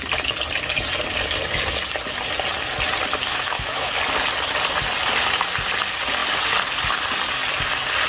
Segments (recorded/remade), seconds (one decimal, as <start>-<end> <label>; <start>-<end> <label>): 0.0-3.3 recorded; 3.3-3.9 remade; 3.9-8.1 recorded